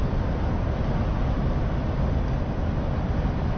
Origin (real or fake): real